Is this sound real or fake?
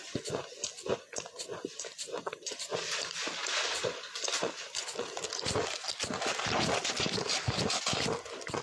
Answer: real